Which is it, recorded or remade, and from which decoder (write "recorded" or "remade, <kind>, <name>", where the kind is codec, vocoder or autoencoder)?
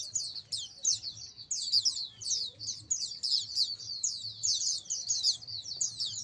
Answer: recorded